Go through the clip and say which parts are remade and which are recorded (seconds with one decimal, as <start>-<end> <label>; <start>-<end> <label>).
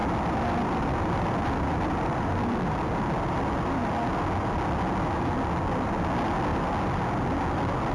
0.0-2.7 remade; 2.7-7.9 recorded